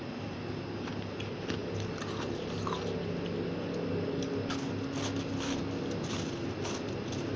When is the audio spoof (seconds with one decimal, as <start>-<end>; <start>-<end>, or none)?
none